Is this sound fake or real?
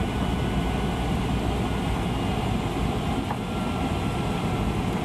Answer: real